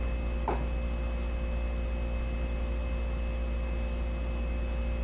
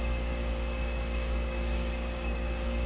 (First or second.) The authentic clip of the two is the first